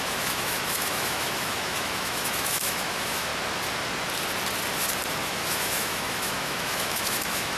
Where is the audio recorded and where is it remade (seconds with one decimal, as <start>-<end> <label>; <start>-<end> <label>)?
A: 0.0-3.3 remade; 3.3-5.2 recorded; 5.2-7.6 remade